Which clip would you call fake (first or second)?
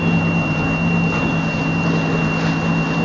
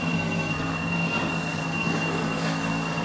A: second